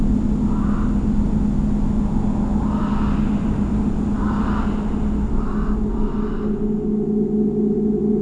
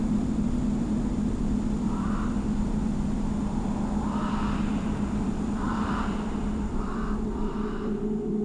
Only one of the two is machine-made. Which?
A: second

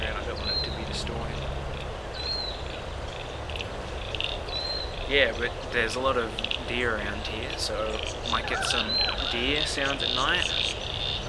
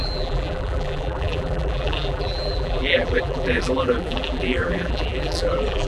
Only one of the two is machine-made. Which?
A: second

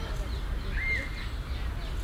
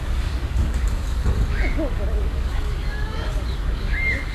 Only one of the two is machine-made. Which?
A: second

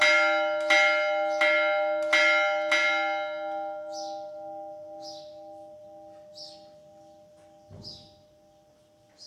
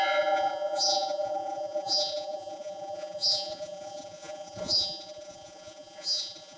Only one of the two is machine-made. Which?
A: second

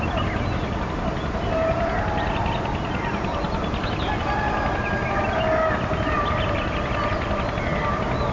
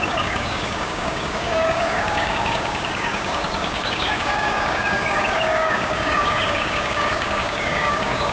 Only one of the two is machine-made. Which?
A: second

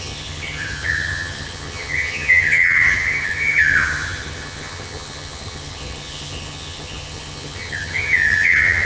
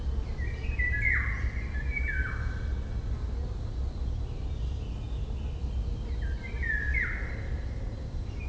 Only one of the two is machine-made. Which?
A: first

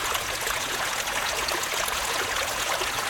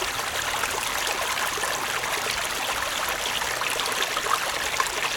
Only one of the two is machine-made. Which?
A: first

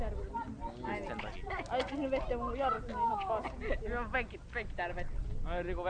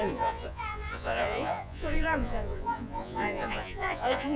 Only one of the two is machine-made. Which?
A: second